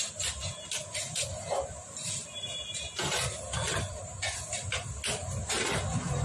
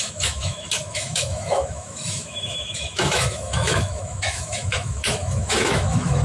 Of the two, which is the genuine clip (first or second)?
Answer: first